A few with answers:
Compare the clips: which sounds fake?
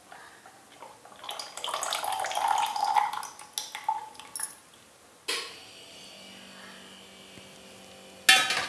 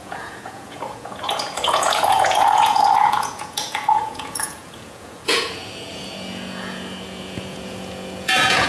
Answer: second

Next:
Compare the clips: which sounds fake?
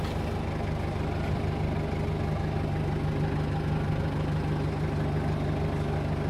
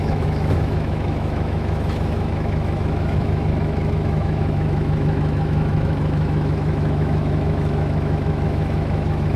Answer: second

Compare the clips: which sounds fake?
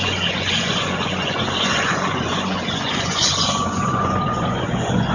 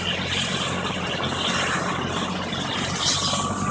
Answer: first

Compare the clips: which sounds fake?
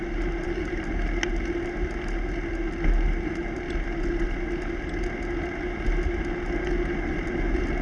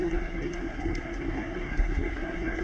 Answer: second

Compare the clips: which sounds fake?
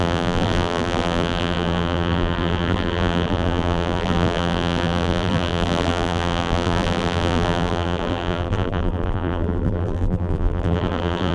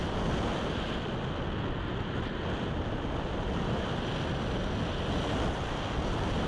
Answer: first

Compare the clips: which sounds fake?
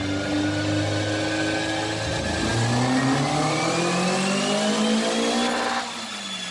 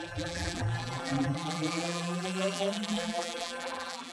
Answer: second